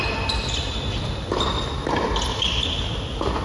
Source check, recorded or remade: recorded